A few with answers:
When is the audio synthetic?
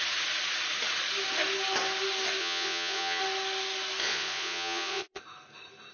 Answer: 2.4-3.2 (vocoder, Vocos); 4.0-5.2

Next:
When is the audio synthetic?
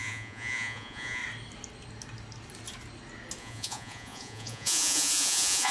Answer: 0.0-1.2 (vocoder, Vocos); 3.4-5.7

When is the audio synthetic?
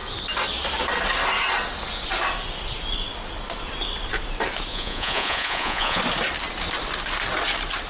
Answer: 4.7-6.0 (vocoder, Vocos)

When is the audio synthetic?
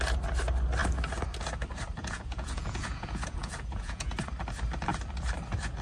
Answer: 2.0-4.1 (vocoder, Vocos)